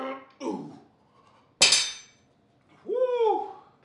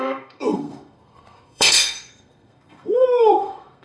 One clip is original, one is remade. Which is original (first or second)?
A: first